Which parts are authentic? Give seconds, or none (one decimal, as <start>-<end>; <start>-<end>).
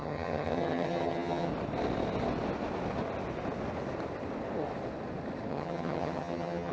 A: 1.5-5.5